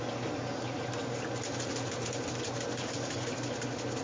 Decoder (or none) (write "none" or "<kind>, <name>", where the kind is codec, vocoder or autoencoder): none